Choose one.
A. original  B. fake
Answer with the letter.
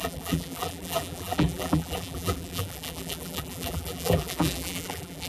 B